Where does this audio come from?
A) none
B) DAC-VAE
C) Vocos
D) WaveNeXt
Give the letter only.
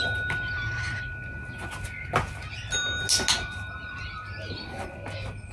A